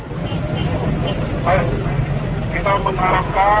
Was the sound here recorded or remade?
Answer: recorded